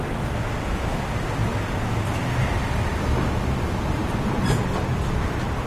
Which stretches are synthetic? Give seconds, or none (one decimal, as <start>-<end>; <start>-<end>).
none